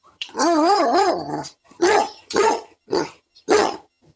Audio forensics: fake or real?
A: fake